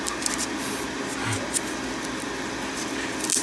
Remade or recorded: recorded